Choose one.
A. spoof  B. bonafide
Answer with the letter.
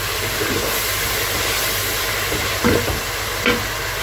B